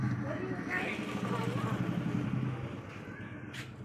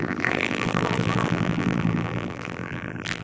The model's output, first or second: second